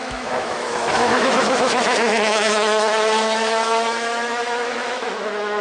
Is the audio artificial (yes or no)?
yes